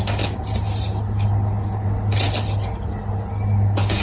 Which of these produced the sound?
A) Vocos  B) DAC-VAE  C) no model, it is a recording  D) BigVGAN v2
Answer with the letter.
C